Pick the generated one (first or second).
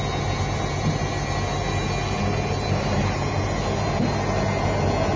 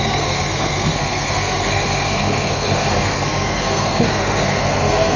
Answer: second